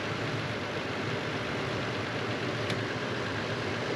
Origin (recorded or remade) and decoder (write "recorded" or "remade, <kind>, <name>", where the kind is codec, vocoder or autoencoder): remade, vocoder, BigVGAN v2